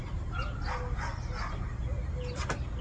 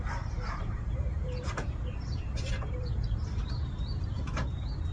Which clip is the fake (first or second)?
second